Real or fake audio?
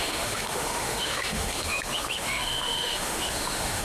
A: fake